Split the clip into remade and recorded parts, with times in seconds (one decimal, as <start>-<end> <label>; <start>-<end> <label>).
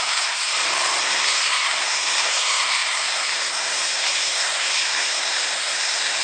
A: 0.0-0.5 remade; 0.5-1.0 recorded; 1.0-6.2 remade